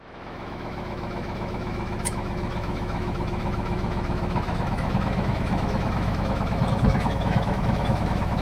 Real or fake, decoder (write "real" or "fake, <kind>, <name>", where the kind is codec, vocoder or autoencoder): fake, autoencoder, DAC-VAE